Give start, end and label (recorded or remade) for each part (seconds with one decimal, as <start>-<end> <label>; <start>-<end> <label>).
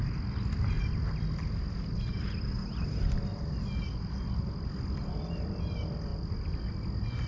0.0-7.3 recorded